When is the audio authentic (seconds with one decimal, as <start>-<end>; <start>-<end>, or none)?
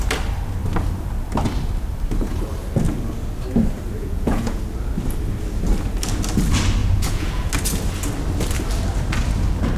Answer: 0.0-4.0; 4.6-6.8; 7.5-9.8